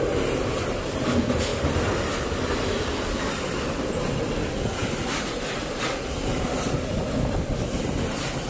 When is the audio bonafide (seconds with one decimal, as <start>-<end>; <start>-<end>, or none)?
0.0-1.5; 2.8-4.8; 7.8-8.5